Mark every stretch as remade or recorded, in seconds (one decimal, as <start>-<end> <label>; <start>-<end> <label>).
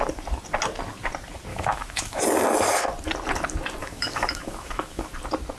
0.0-1.5 recorded; 1.5-2.2 remade; 2.2-3.8 recorded; 3.8-5.1 remade; 5.1-5.6 recorded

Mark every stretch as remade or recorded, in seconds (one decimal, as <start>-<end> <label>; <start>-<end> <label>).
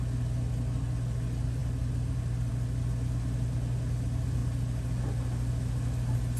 0.0-6.4 recorded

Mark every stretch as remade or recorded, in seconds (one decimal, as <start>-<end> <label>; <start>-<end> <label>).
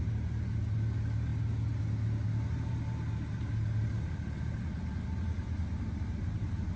0.0-6.8 recorded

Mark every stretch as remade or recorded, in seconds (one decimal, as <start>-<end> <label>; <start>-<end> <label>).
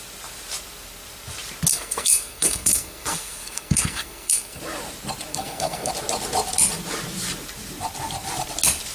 0.0-1.7 recorded; 1.7-4.6 remade; 4.6-5.3 recorded; 5.3-5.9 remade; 5.9-8.9 recorded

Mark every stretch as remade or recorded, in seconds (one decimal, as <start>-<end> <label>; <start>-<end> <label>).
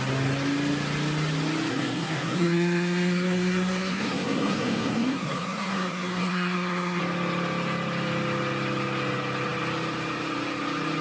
0.0-1.7 recorded; 1.7-7.0 remade; 7.0-11.0 recorded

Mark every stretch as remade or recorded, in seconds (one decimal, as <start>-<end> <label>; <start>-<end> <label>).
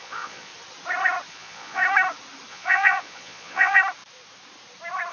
0.0-0.5 remade; 0.5-1.3 recorded; 1.3-1.8 remade; 1.8-2.5 recorded; 2.5-3.8 remade; 3.8-5.1 recorded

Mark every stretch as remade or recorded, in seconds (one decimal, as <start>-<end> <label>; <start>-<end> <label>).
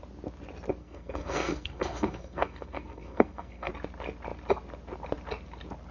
0.0-0.8 recorded; 0.8-3.7 remade; 3.7-5.9 recorded